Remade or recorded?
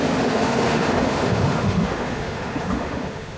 remade